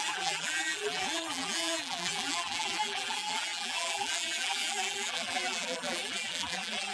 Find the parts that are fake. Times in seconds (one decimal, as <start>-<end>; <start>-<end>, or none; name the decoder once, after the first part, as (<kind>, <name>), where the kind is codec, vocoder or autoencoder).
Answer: 0.0-6.9 (vocoder, BigVGAN v2)